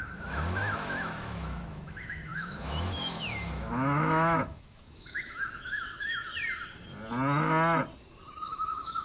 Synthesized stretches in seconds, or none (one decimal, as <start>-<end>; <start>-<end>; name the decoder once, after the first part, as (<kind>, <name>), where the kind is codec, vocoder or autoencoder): 0.0-6.3 (autoencoder, DAC-VAE); 8.3-9.0